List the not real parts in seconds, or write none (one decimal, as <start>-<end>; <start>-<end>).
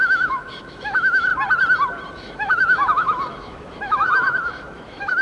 0.0-1.3; 2.1-5.2